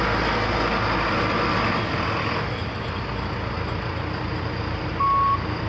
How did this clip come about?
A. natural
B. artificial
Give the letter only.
A